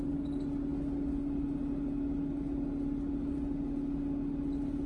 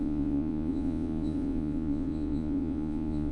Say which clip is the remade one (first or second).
second